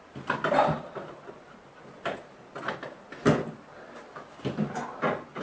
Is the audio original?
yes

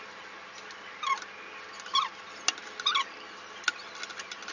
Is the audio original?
yes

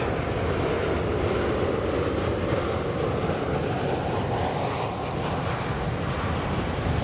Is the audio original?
yes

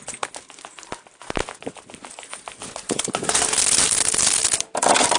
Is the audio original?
yes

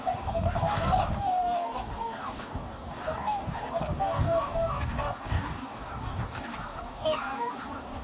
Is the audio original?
no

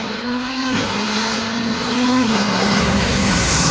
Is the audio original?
no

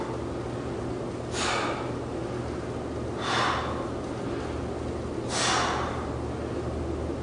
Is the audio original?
yes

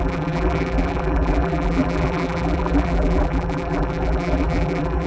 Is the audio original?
no